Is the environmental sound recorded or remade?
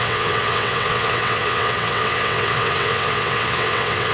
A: remade